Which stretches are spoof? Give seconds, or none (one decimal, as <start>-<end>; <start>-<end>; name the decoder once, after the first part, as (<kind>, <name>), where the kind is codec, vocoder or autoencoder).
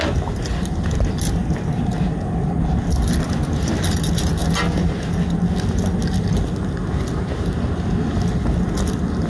none